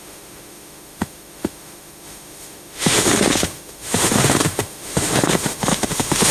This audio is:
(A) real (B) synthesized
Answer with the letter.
B